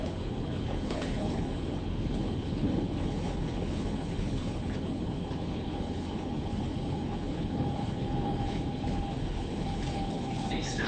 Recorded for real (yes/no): no